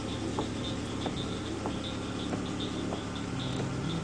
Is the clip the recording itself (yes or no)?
yes